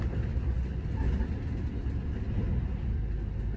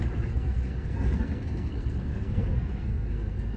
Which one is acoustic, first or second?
first